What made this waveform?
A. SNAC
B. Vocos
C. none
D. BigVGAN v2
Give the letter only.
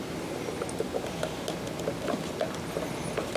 C